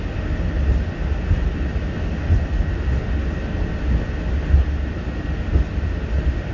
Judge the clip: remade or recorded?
recorded